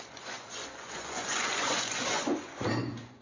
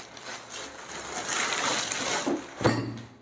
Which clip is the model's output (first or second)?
first